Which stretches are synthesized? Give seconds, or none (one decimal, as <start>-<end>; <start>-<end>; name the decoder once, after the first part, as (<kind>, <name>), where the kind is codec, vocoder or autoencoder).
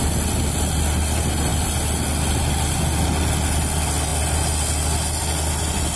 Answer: none